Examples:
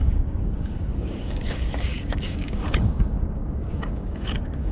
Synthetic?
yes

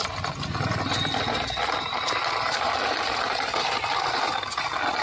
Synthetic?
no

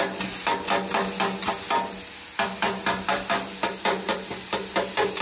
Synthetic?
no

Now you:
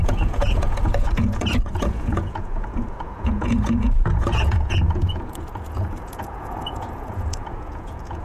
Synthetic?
yes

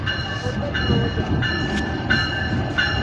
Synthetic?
no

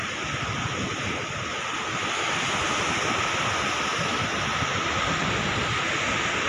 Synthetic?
no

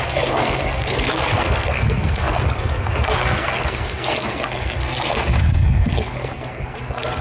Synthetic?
yes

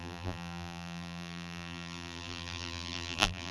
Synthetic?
yes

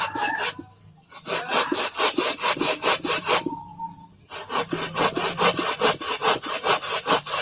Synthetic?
yes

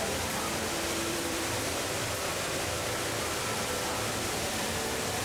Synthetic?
yes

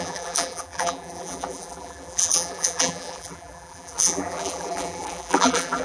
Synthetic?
yes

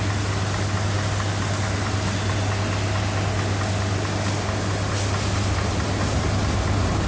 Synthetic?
no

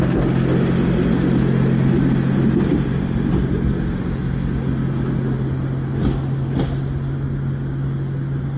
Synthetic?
no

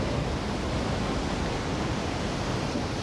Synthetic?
no